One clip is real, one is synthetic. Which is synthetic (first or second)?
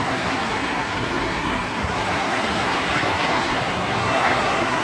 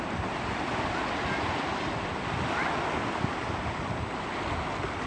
first